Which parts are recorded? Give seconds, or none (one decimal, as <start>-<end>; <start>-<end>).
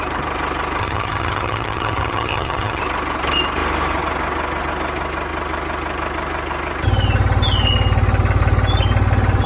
0.0-0.8; 2.8-9.5